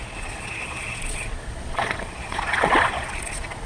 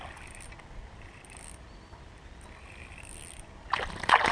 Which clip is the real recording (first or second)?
second